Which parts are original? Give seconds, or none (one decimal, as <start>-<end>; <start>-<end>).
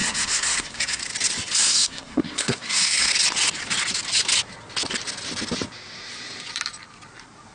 1.0-1.6; 3.1-7.5